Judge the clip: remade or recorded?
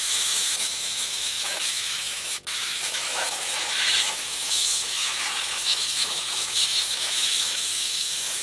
remade